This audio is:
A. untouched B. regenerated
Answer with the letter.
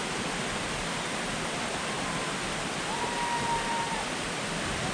A